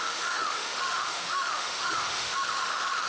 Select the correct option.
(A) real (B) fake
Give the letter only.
B